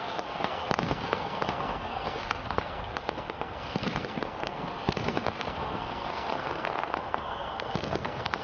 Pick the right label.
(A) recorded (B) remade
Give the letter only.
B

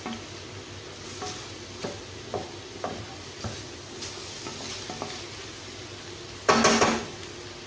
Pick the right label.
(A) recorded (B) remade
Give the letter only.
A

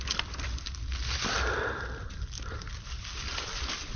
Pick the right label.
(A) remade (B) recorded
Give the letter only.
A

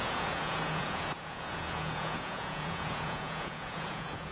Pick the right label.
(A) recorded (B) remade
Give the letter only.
B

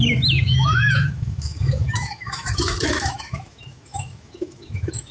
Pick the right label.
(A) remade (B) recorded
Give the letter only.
A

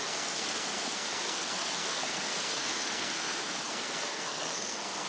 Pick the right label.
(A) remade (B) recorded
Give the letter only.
A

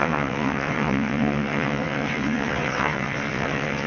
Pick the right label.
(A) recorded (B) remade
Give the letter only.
B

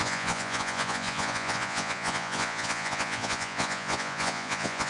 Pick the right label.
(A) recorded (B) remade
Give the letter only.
B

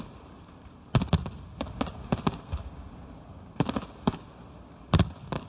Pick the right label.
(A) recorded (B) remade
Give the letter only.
A